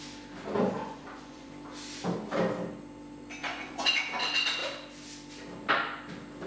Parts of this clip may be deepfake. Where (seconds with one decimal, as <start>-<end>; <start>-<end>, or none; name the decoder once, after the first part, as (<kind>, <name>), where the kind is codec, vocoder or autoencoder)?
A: 0.8-1.5 (vocoder, Vocos); 3.4-4.0

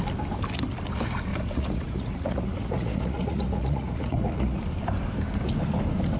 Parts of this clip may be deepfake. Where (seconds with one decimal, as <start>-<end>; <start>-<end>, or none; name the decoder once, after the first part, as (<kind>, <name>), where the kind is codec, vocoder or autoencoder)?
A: 1.3-4.6 (vocoder, Vocos)

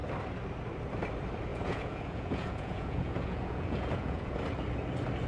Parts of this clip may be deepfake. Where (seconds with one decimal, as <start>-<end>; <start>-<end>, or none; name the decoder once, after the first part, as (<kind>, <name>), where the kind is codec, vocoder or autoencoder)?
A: 1.5-4.3 (vocoder, Vocos)

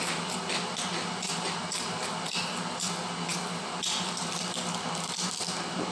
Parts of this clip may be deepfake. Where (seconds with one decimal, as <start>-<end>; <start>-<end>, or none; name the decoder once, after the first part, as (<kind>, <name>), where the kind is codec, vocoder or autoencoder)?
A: none

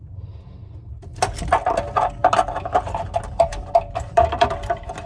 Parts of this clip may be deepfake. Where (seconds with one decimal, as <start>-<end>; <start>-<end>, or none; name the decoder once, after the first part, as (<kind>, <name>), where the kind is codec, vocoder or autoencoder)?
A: none

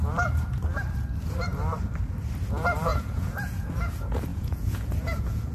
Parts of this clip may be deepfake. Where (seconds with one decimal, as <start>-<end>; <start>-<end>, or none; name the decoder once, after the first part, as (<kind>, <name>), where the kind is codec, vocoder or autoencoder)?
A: 2.9-3.7 (vocoder, Vocos); 4.3-5.5